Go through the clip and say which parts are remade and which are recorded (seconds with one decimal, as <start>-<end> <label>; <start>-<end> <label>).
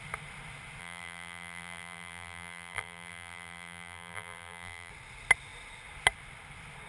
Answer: 0.0-0.8 recorded; 0.8-4.9 remade; 4.9-6.9 recorded